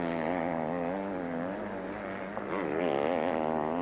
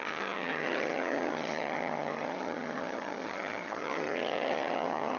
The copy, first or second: second